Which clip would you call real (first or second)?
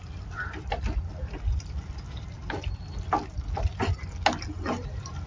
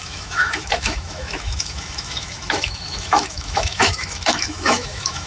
first